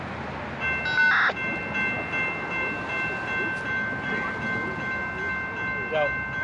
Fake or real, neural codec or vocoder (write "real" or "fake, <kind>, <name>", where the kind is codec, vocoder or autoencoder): real